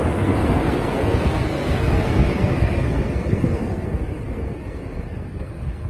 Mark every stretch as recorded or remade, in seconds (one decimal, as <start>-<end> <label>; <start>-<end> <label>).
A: 0.0-5.9 remade